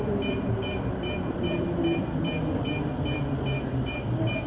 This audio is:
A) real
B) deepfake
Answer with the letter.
B